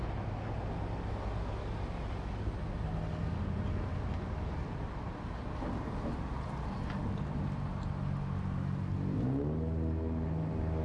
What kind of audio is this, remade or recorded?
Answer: recorded